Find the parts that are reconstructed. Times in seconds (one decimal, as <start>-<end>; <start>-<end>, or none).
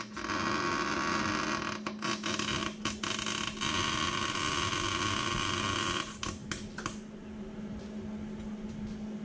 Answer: none